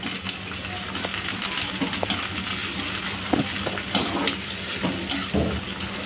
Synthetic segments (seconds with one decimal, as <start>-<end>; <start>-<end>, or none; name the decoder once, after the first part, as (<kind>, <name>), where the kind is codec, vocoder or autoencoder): 1.1-1.7 (autoencoder, DAC-VAE)